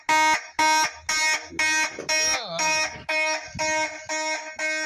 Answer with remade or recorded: recorded